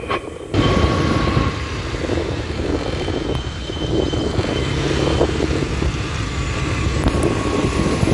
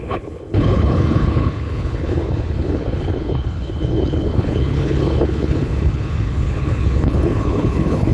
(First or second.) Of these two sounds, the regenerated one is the second